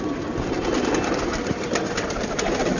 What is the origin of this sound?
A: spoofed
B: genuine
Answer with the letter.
B